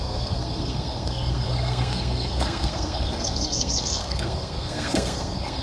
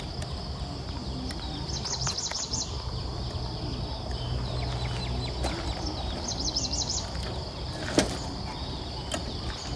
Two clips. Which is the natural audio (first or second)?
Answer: second